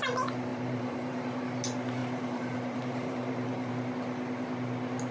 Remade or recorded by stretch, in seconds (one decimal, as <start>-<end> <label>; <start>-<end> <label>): 0.0-0.5 recorded; 0.5-1.4 remade; 1.4-2.0 recorded; 2.0-3.7 remade; 3.7-5.1 recorded